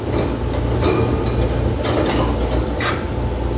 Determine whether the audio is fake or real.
real